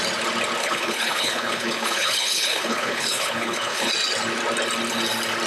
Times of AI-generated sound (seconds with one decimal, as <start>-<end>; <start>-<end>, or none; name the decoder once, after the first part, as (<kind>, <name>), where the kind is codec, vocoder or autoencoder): 0.6-3.9 (codec, HILCodec)